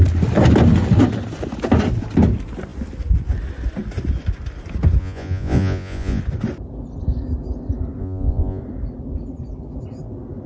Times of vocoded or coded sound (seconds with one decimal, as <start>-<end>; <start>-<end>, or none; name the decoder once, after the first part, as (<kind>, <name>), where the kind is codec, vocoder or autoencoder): 5.0-6.2 (vocoder, Vocos); 8.0-8.6